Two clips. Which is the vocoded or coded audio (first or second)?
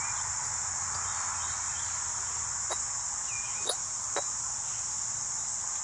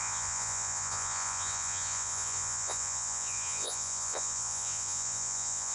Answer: second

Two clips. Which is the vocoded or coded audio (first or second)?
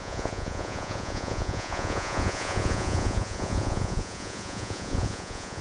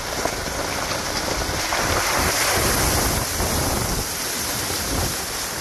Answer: first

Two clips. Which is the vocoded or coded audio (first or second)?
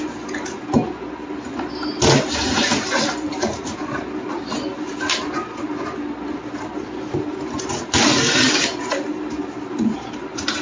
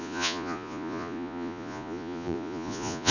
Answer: second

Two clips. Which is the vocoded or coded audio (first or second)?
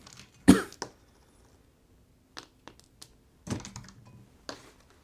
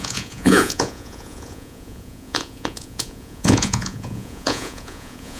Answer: second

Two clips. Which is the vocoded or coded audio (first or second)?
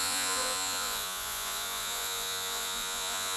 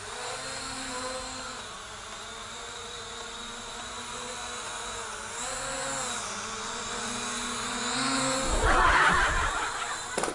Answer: first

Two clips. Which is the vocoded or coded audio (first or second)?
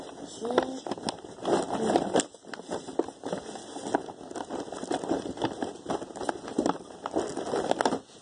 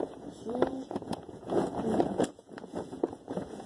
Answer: second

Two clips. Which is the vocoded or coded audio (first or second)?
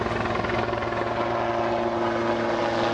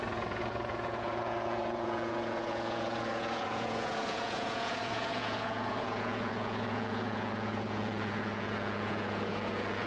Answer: second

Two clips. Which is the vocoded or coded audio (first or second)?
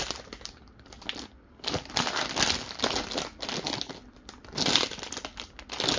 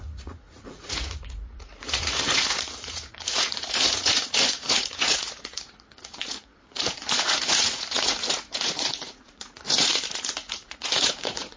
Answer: second